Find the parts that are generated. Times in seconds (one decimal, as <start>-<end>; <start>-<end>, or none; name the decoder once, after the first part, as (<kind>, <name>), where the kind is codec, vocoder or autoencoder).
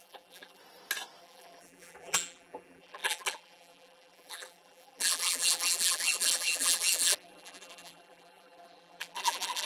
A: 0.0-0.6 (vocoder, BigVGAN v2); 1.2-9.7